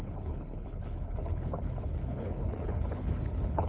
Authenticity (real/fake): fake